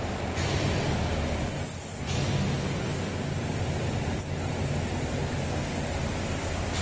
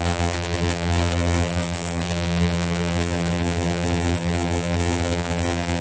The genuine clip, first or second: first